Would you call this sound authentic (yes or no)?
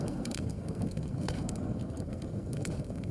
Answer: no